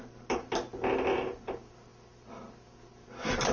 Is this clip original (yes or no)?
yes